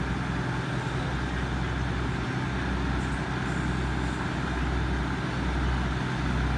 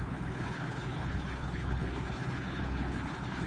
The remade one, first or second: second